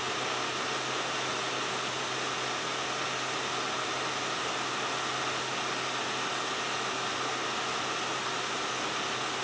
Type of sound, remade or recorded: recorded